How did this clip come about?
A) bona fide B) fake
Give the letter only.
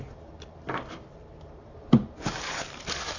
B